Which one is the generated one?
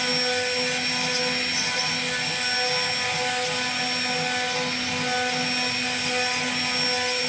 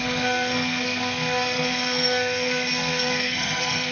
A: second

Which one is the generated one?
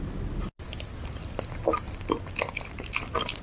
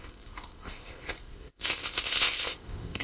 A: second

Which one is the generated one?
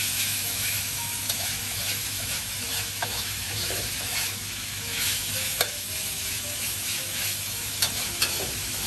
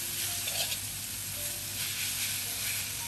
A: first